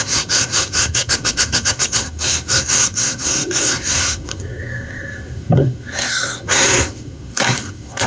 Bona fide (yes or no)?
no